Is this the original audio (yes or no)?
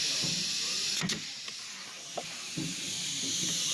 no